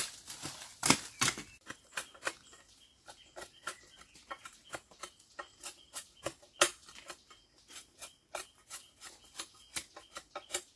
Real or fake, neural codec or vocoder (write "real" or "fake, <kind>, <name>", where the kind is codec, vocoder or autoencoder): real